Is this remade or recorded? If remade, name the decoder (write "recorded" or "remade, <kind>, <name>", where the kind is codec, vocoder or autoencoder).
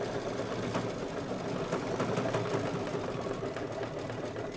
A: recorded